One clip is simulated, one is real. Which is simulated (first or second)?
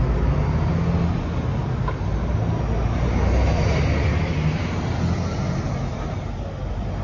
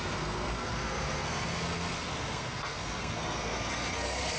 second